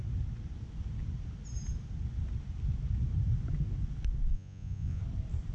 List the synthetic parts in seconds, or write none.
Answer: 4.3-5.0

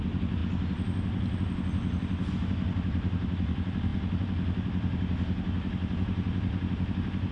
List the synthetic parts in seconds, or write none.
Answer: none